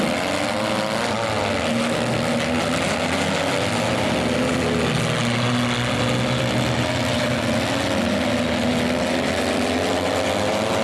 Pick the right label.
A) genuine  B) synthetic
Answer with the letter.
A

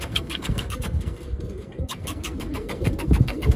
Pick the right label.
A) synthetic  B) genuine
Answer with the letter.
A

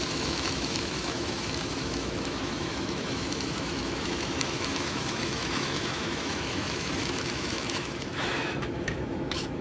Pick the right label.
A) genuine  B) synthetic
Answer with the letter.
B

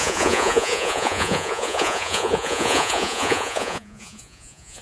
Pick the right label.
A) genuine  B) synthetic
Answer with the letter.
B